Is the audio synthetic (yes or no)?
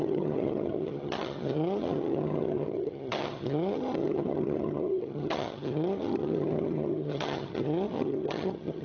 yes